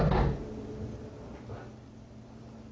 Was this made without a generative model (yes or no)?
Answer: yes